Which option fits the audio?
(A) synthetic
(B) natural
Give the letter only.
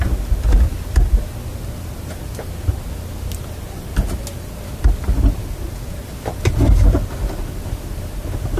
B